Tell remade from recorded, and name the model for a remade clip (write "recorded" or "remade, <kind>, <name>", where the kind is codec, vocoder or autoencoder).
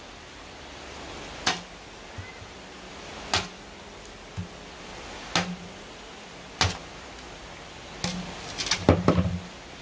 recorded